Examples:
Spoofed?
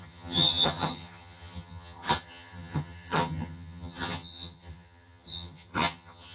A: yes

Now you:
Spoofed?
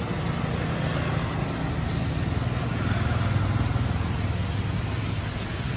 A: no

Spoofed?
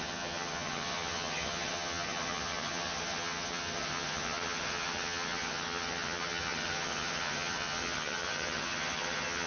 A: yes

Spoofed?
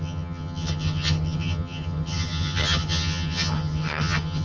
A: yes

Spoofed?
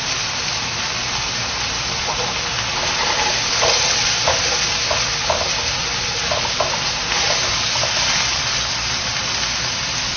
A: no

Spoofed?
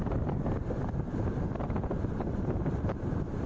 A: no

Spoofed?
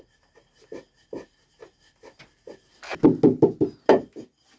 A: no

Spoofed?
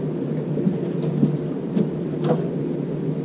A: no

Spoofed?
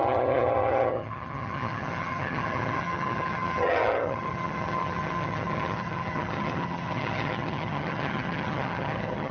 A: yes